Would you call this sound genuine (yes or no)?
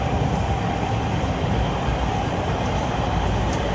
yes